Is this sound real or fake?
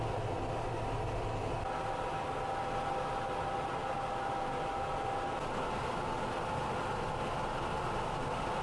real